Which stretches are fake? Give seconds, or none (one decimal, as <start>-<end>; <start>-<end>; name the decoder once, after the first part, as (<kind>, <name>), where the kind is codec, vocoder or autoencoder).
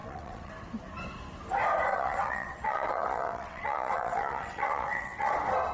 0.0-0.5 (vocoder, WaveNeXt); 1.9-5.3